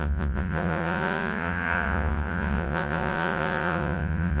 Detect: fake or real fake